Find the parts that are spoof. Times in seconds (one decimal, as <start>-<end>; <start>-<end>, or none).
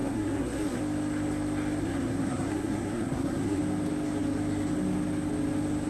0.0-0.8; 1.8-3.6